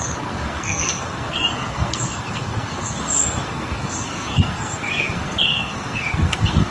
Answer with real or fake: fake